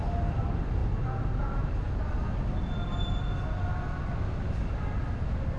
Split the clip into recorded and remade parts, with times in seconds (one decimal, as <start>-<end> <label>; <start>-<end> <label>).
0.0-5.6 recorded